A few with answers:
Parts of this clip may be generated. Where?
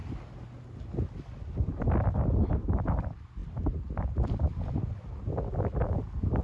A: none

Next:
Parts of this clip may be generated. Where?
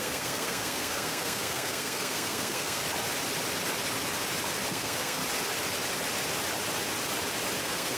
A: 0.0-2.8 (codec, SNAC); 4.7-5.2; 7.6-8.0